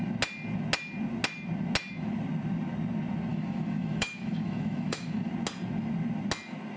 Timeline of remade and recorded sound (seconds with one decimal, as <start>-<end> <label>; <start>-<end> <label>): 0.0-3.3 recorded; 3.3-5.3 remade; 5.3-6.8 recorded